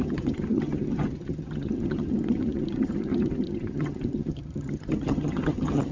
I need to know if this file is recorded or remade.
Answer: remade